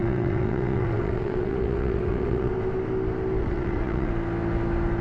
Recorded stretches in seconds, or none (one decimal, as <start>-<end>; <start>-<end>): 2.5-3.4; 4.1-5.0